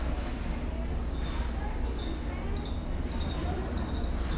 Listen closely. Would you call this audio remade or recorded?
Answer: recorded